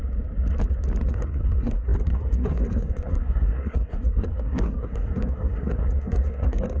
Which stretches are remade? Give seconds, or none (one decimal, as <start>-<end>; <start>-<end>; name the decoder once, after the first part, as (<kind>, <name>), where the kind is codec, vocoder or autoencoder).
1.1-6.8 (codec, SNAC)